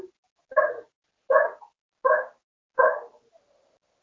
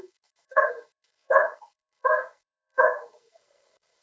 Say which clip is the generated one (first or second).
second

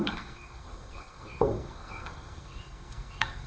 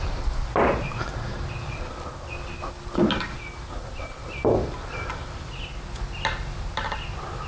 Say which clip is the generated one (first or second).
first